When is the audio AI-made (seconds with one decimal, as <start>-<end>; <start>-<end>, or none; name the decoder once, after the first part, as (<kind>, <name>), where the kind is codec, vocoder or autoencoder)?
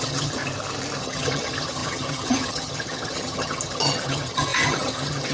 0.0-0.4 (vocoder, HiFi-GAN); 1.0-5.3